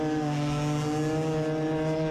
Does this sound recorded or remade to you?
recorded